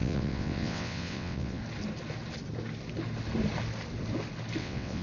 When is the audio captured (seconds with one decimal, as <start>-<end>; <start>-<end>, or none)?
1.6-4.6

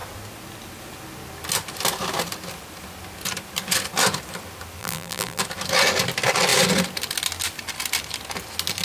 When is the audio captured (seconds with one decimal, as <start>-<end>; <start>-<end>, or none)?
0.0-4.8; 5.4-8.8